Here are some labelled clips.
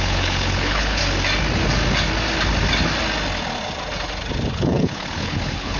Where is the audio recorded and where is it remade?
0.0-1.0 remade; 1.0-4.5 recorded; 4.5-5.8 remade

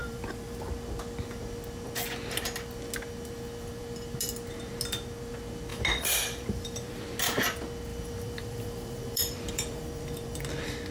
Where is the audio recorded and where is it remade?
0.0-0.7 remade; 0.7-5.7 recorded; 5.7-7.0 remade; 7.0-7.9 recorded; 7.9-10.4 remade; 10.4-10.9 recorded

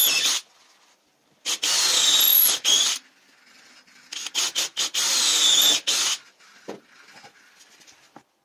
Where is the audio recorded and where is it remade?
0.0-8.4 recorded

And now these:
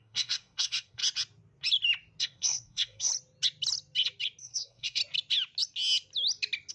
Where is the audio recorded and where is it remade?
0.0-1.0 remade; 1.0-2.2 recorded; 2.2-3.1 remade; 3.1-4.4 recorded; 4.4-5.0 remade; 5.0-6.7 recorded

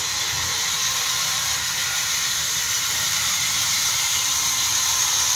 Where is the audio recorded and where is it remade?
0.0-1.8 recorded; 1.8-5.0 remade; 5.0-5.4 recorded

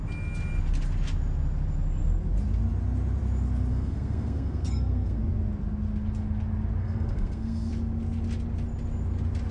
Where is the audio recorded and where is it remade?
0.0-3.7 recorded; 3.7-5.2 remade; 5.2-6.8 recorded; 6.8-7.7 remade; 7.7-9.5 recorded

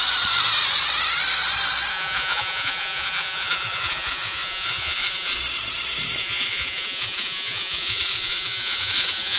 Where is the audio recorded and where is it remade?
0.0-1.9 recorded; 1.9-5.4 remade; 5.4-6.2 recorded; 6.2-9.4 remade